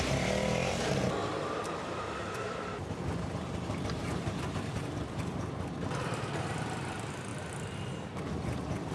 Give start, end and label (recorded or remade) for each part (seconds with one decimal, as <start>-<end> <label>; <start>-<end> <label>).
0.0-1.2 recorded; 1.2-5.6 remade; 5.6-7.3 recorded; 7.3-8.2 remade; 8.2-8.9 recorded